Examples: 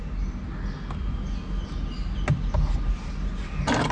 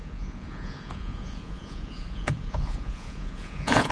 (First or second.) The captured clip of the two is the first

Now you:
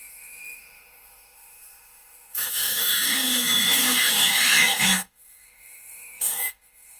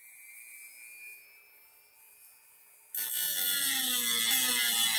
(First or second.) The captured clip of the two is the second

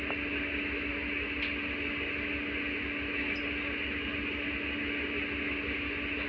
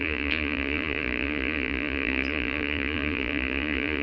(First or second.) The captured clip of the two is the first